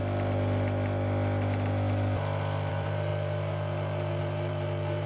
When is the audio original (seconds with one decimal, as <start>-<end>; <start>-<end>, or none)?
0.0-2.7